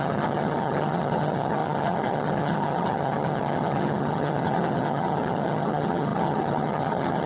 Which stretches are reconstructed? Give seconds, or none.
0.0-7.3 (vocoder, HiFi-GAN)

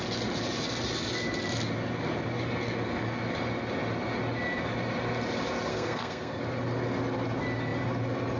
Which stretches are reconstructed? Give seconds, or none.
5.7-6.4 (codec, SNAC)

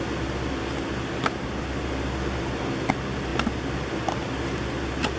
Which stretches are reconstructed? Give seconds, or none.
none